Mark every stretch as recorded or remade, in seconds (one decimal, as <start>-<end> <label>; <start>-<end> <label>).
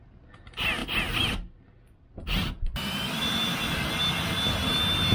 0.0-0.8 recorded; 0.8-3.9 remade; 3.9-5.1 recorded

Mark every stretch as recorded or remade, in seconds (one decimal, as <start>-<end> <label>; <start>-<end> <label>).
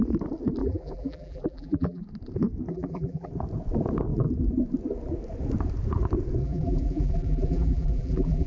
0.0-0.6 recorded; 0.6-2.0 remade; 2.0-2.7 recorded; 2.7-3.3 remade; 3.3-6.4 recorded; 6.4-8.5 remade